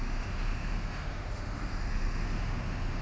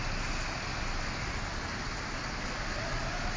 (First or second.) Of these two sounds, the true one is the second